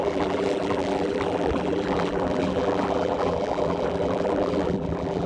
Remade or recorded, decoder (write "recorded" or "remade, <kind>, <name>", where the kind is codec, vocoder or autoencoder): remade, vocoder, BigVGAN v2